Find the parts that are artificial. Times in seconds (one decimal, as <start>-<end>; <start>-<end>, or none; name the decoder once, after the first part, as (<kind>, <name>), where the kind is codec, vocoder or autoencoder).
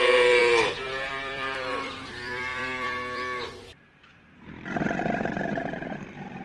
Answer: 0.0-6.4 (vocoder, BigVGAN v2)